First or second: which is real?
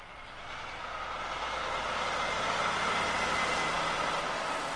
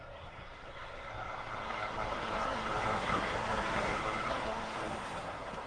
first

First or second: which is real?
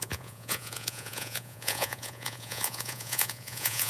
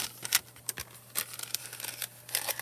second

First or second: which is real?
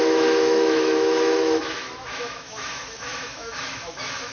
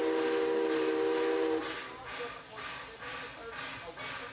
second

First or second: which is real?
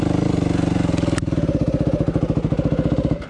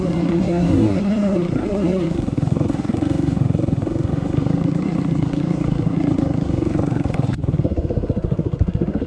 first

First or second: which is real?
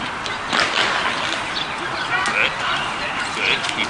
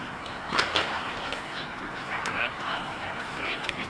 first